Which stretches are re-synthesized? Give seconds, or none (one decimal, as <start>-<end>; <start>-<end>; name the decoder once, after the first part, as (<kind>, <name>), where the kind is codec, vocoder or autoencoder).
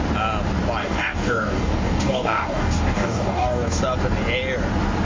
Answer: 0.8-3.8 (codec, DAC)